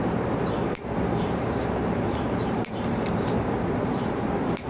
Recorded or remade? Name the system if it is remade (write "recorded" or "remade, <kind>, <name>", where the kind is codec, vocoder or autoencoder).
remade, vocoder, BigVGAN v2